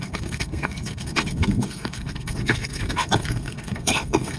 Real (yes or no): no